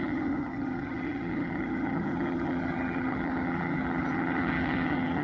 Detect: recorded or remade remade